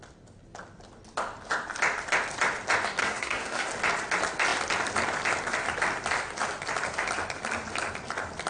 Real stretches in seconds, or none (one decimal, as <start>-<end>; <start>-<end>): 0.0-3.0; 3.7-8.5